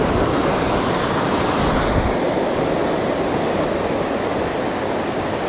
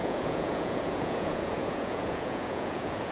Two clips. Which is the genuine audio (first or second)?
first